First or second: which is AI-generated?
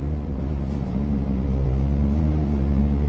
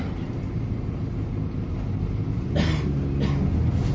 first